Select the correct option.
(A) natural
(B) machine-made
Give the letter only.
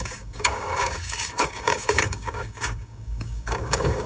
B